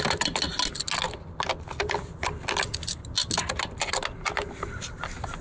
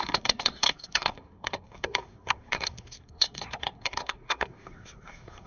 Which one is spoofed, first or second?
second